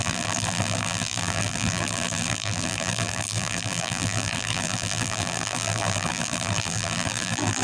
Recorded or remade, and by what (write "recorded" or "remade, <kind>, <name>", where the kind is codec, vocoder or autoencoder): remade, vocoder, BigVGAN v2